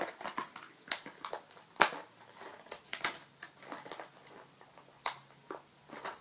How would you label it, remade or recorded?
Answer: recorded